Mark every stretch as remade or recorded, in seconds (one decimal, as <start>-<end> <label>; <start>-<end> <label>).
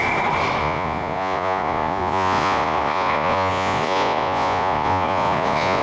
0.0-0.6 recorded; 0.6-5.8 remade